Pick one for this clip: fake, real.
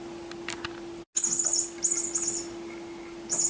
real